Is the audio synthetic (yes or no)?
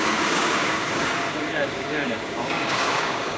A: yes